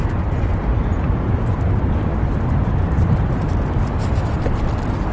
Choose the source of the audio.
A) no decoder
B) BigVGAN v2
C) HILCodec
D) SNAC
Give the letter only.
A